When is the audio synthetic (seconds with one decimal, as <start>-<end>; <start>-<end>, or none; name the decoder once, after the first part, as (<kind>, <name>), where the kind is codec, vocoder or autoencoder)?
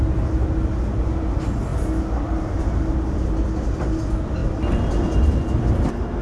none